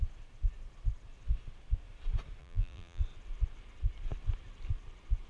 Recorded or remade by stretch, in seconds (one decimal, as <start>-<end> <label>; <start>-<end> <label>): 0.0-2.4 recorded; 2.4-3.0 remade; 3.0-5.3 recorded